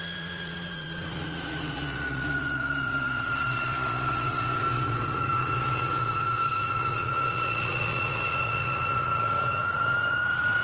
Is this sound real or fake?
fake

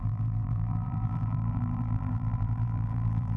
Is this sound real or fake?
fake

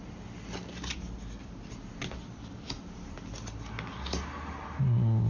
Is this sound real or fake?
real